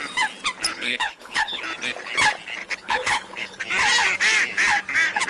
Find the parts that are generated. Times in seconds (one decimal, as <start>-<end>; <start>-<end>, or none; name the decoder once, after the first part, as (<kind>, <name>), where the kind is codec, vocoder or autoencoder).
0.7-1.6 (codec, HILCodec); 2.6-3.6